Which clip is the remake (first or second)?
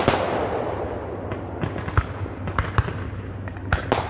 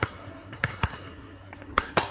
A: second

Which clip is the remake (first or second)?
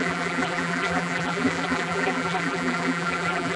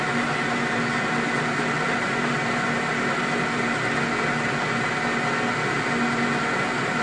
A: first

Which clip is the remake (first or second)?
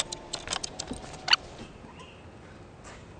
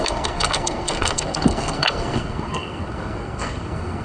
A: second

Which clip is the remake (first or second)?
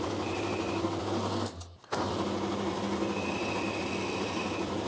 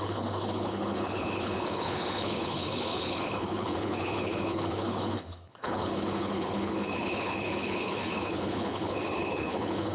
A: second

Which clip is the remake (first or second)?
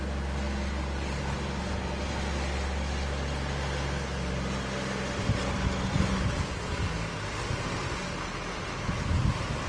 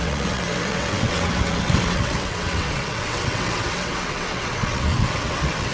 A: second